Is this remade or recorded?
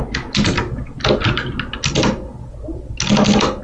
recorded